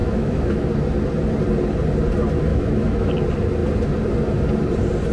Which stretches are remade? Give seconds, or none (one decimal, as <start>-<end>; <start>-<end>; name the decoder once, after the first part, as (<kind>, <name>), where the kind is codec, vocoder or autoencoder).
0.0-0.7 (autoencoder, DAC-VAE); 2.5-3.1